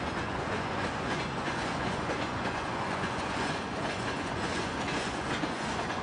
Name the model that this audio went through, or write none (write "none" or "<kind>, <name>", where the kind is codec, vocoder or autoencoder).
vocoder, Vocos